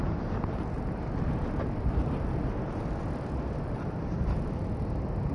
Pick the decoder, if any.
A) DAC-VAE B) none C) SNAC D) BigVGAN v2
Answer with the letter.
B